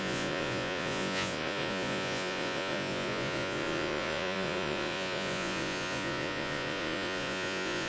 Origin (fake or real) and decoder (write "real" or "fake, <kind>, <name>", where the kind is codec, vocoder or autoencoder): fake, vocoder, Vocos